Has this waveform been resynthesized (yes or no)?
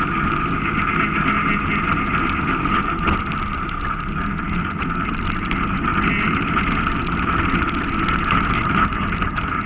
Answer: no